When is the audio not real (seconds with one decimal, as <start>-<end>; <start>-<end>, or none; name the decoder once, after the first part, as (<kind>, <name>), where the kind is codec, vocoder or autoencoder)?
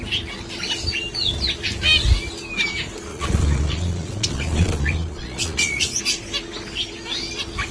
3.1-6.0 (vocoder, Vocos)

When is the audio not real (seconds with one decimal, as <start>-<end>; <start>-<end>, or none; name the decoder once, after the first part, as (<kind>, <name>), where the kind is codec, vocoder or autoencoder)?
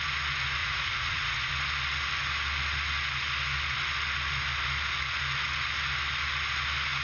0.6-1.5 (vocoder, Vocos)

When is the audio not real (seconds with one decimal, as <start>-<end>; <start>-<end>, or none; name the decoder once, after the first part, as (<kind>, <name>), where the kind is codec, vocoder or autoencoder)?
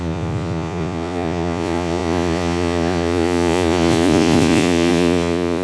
0.0-5.6 (vocoder, Vocos)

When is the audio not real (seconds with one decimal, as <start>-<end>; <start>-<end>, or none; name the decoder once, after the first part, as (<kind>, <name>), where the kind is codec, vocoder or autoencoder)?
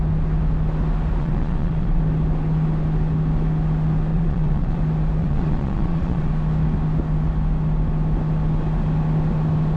1.2-2.0 (vocoder, Vocos); 4.1-4.8; 5.2-6.3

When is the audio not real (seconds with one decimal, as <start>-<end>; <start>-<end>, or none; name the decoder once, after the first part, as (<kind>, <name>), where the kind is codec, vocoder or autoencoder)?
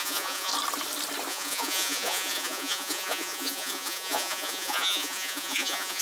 0.0-0.5 (vocoder, Vocos); 1.3-6.0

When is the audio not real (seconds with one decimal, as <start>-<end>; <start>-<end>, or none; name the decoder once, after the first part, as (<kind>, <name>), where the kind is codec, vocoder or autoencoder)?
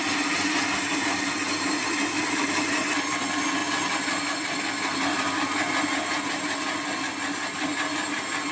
none